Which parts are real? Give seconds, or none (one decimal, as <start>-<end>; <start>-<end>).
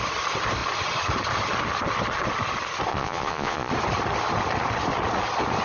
0.0-2.9; 3.7-5.6